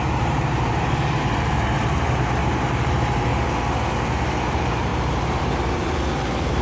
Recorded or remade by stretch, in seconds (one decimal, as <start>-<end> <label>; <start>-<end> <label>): 0.0-2.4 remade; 2.4-2.9 recorded; 2.9-3.3 remade; 3.3-4.5 recorded; 4.5-6.6 remade